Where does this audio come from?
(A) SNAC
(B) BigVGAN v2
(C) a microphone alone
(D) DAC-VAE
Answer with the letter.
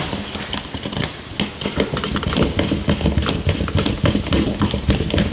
C